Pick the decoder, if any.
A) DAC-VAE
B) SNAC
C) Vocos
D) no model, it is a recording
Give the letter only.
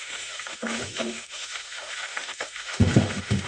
A